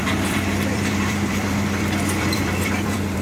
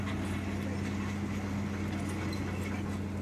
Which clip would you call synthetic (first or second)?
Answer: first